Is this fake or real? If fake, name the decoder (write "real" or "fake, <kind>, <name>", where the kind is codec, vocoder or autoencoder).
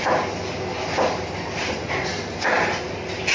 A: real